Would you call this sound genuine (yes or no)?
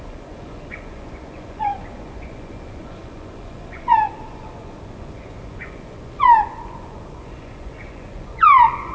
no